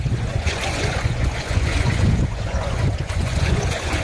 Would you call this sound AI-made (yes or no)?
yes